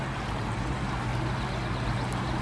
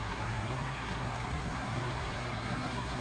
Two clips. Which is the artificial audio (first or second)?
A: second